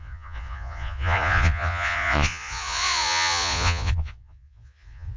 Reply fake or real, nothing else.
fake